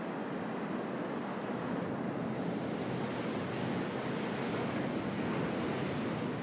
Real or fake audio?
real